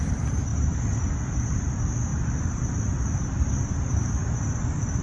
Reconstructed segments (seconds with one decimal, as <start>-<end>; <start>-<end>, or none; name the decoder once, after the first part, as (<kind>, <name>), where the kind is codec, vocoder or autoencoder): none